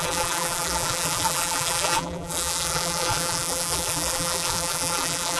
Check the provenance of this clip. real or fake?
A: fake